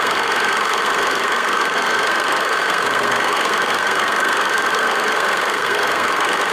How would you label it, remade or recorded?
remade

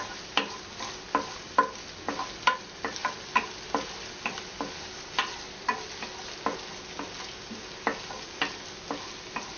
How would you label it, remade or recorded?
recorded